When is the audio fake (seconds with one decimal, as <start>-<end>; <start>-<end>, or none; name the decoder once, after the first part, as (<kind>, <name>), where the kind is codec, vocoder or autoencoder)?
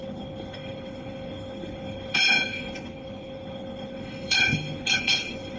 0.0-5.6 (codec, HILCodec)